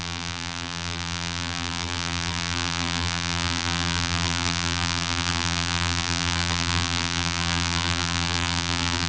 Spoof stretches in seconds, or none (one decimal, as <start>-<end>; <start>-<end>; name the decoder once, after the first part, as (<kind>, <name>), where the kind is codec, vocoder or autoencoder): 0.0-9.1 (vocoder, BigVGAN v2)